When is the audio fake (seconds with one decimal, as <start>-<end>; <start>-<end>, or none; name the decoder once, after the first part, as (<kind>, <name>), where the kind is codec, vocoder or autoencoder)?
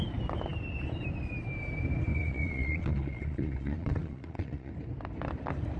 2.1-4.7 (vocoder, Vocos)